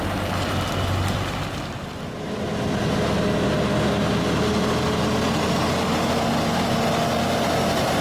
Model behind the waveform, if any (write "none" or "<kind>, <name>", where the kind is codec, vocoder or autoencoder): none